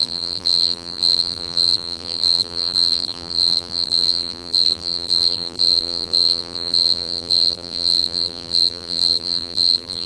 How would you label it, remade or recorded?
remade